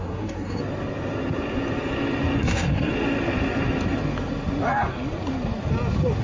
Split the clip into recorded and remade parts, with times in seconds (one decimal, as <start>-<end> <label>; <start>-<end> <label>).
0.0-0.6 remade; 0.6-2.4 recorded; 2.4-2.9 remade; 2.9-6.2 recorded